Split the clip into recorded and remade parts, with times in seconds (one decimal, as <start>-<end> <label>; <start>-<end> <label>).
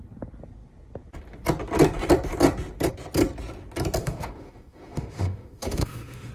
0.0-4.0 recorded; 4.0-6.3 remade